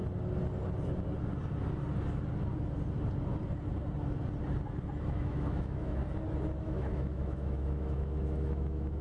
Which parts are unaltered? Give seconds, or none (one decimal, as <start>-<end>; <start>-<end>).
0.0-5.0; 6.0-6.6